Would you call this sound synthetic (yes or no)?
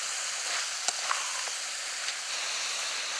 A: no